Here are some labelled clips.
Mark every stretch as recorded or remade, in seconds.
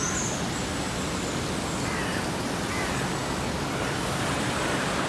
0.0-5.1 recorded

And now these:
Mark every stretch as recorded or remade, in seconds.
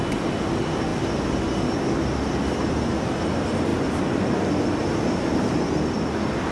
0.0-6.5 recorded